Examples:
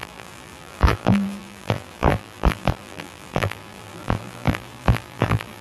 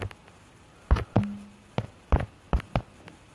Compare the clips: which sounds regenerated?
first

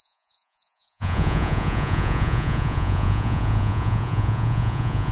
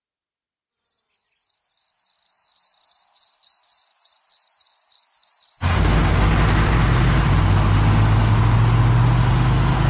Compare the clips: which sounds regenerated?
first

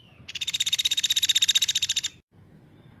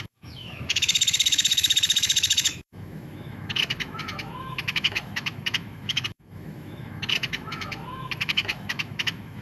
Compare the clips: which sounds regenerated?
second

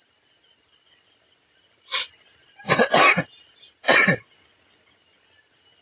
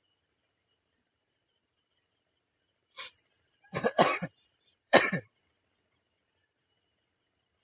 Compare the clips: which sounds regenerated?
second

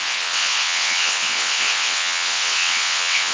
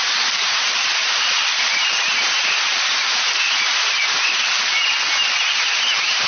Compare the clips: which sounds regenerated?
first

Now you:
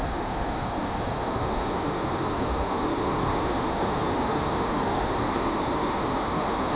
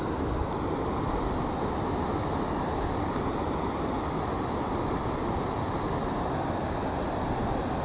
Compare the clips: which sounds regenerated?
first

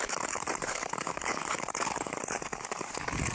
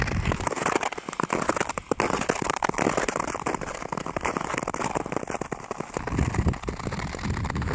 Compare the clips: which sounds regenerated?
first